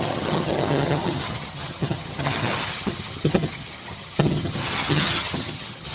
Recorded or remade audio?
remade